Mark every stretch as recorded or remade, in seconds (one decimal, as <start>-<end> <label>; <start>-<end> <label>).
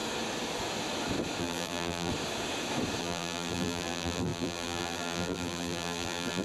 0.0-1.4 recorded; 1.4-2.1 remade; 2.1-3.0 recorded; 3.0-6.4 remade